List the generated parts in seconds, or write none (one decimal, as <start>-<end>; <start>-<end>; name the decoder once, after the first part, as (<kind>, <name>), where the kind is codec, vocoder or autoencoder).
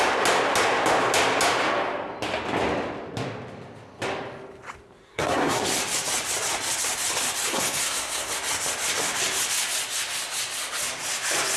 5.0-5.6 (codec, SNAC); 7.5-8.3